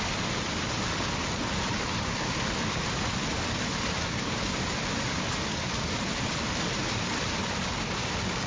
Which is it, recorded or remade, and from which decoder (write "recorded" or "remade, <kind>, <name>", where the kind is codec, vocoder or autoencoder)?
recorded